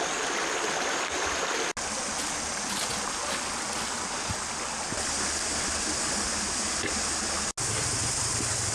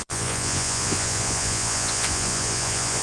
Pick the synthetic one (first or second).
second